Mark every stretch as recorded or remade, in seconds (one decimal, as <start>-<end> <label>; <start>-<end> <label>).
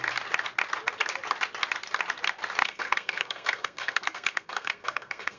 0.0-2.6 recorded; 2.6-5.4 remade